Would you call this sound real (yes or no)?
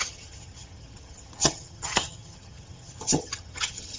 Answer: no